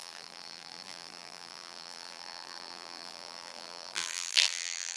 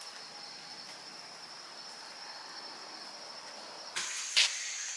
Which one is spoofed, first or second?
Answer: first